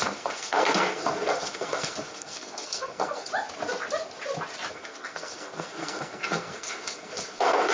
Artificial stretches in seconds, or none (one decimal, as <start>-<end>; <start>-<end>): 0.0-3.3; 4.7-7.7